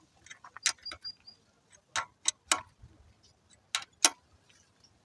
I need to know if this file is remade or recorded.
recorded